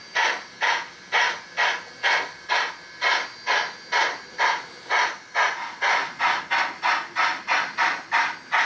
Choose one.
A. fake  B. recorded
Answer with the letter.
B